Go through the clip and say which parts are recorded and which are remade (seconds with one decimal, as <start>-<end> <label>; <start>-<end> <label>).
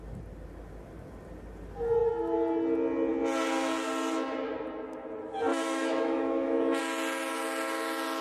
0.0-5.5 recorded; 5.5-6.8 remade; 6.8-8.2 recorded